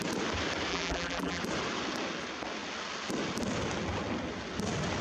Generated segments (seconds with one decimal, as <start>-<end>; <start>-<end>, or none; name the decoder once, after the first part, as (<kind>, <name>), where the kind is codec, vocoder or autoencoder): 0.7-1.4 (vocoder, BigVGAN v2)